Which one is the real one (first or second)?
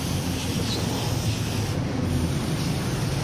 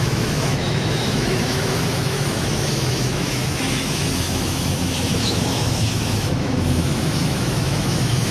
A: first